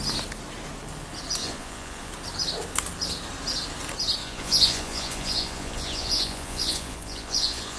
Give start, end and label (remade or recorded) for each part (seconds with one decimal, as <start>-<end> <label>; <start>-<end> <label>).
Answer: 0.0-1.4 recorded; 1.4-2.1 remade; 2.1-4.2 recorded; 4.2-7.8 remade